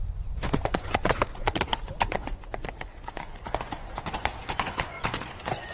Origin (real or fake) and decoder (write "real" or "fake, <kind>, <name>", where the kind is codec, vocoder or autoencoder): fake, vocoder, Vocos